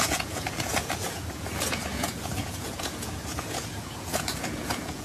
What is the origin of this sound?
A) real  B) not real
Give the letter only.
B